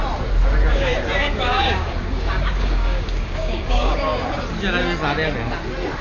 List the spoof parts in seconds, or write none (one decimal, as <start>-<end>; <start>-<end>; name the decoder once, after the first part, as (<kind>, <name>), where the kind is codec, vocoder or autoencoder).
0.7-4.3 (codec, DAC)